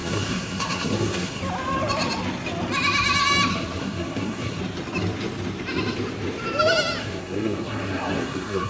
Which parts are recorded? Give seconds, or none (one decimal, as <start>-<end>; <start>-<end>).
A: 1.4-3.5; 4.6-7.0